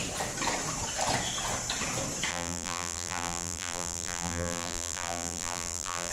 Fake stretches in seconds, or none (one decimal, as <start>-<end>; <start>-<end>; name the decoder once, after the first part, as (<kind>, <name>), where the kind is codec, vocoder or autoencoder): 2.3-6.1 (vocoder, BigVGAN v2)